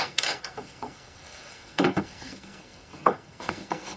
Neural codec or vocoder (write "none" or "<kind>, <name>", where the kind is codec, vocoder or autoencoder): codec, SNAC